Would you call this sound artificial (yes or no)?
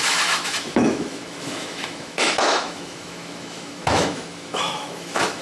yes